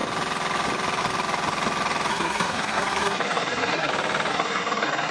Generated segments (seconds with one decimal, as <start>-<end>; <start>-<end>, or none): 2.1-3.9; 4.3-5.1